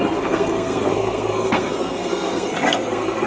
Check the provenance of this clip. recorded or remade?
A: remade